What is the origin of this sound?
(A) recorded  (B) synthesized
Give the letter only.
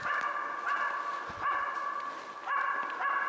A